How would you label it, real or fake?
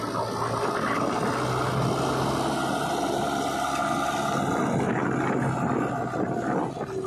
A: real